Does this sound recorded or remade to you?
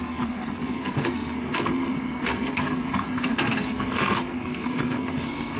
remade